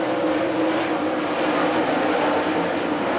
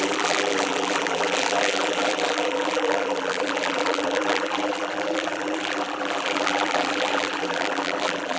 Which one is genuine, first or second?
first